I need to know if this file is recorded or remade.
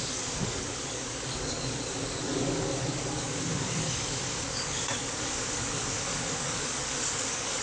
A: remade